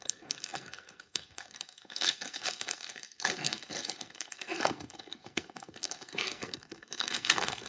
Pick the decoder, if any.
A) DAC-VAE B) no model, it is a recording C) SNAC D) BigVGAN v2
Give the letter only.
C